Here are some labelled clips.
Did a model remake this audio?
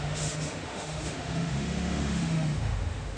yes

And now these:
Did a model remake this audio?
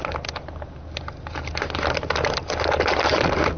no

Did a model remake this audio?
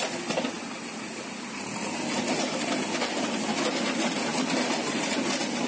no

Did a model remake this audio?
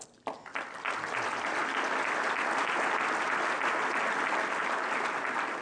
no